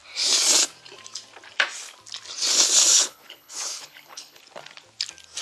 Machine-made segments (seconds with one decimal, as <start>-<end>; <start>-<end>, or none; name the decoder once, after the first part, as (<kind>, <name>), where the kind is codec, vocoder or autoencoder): 2.9-4.4 (codec, HILCodec)